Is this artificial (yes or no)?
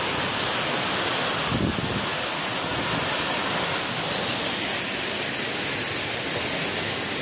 no